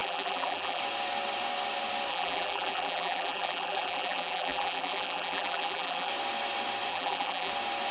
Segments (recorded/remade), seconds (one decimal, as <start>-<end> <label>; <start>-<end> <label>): 0.0-0.8 remade; 0.8-2.1 recorded; 2.1-6.1 remade; 6.1-6.9 recorded; 6.9-7.5 remade; 7.5-7.9 recorded